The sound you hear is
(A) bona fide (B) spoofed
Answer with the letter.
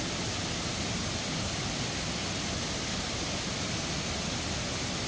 A